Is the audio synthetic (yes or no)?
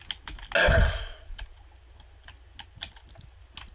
no